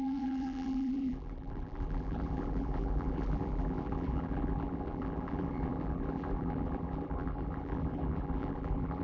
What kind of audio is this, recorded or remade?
remade